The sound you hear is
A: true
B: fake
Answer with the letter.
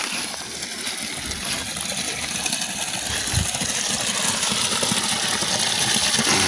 A